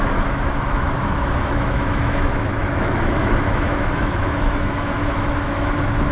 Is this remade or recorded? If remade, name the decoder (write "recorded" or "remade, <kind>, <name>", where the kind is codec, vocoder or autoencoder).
remade, autoencoder, DAC-VAE